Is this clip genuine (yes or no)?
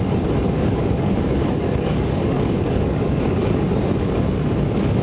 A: no